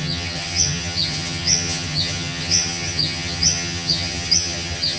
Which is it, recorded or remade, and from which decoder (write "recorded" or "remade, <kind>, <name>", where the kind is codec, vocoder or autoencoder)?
remade, vocoder, HiFi-GAN